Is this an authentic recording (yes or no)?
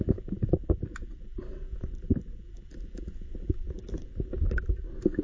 yes